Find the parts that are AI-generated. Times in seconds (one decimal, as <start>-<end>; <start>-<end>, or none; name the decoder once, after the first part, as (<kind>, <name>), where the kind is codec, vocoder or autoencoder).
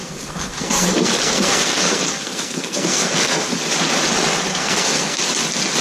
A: 0.0-3.5 (codec, SNAC); 4.5-5.2